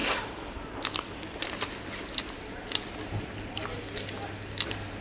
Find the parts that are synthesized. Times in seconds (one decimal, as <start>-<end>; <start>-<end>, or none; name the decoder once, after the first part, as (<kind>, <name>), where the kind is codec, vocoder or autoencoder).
none